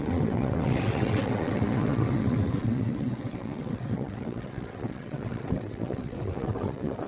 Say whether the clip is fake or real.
fake